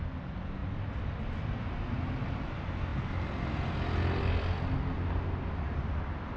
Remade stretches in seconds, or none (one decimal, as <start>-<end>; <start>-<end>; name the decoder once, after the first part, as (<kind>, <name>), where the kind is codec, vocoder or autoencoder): none